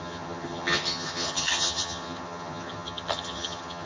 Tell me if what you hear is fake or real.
fake